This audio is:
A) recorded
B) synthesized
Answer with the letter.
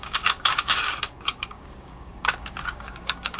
B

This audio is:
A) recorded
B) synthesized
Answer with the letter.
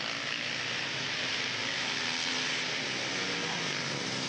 A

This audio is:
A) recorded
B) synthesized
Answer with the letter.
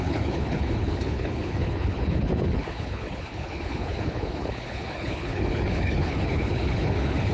B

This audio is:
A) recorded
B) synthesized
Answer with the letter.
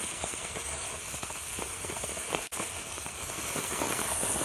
B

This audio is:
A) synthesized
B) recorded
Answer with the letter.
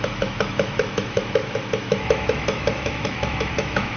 A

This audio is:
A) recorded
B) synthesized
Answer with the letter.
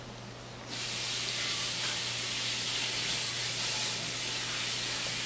A